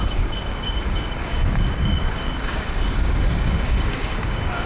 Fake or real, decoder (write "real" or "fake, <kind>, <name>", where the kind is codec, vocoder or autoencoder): fake, codec, DAC